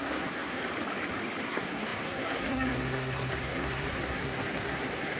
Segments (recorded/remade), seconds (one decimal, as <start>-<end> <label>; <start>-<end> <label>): 0.0-0.6 remade; 0.6-1.4 recorded; 1.4-5.2 remade